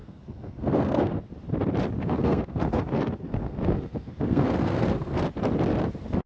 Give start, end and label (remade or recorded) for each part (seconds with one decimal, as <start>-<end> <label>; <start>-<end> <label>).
0.0-1.2 remade; 1.2-2.0 recorded; 2.0-5.2 remade; 5.2-6.3 recorded